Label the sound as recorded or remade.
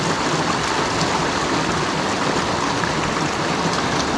recorded